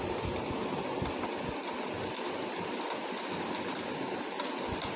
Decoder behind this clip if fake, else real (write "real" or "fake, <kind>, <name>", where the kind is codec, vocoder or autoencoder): real